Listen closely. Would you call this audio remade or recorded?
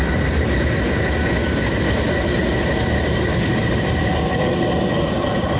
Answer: remade